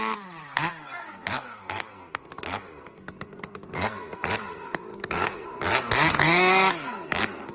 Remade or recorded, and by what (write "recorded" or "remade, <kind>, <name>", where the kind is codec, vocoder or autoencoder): remade, codec, SNAC